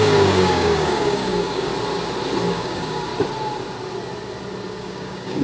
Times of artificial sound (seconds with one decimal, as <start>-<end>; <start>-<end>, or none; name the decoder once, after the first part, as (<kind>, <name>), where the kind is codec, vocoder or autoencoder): 0.0-1.7 (codec, DAC); 2.5-3.1; 4.7-5.4